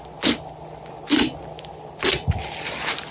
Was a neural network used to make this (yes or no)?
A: no